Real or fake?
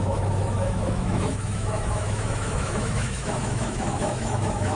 fake